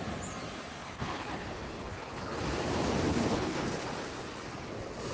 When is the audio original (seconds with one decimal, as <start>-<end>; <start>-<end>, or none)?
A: 0.0-0.8; 1.5-1.9; 2.4-3.1; 3.9-5.1

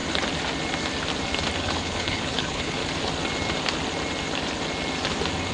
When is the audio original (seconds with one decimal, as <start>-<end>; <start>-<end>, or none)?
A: 0.0-1.6; 2.8-5.5

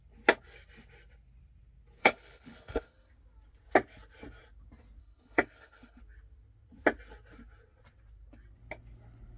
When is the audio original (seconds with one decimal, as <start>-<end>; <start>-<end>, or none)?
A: 0.0-2.0; 3.1-5.0; 6.0-9.4

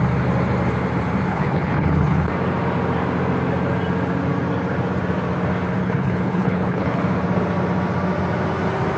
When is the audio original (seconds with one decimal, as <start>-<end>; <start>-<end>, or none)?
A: 0.0-1.3; 2.3-5.8; 7.0-9.0

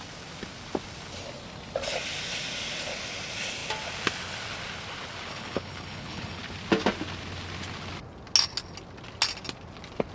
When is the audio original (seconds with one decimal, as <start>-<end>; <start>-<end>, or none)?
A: 0.0-5.3; 6.4-10.1

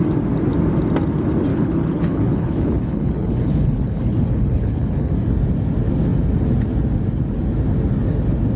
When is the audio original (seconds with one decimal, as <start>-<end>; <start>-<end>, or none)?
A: 0.0-1.5; 5.1-8.6